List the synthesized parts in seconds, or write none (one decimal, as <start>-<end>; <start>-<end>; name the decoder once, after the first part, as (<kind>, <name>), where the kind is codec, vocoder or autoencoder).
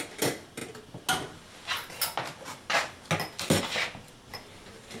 4.3-5.0 (vocoder, BigVGAN v2)